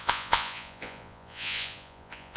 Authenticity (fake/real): fake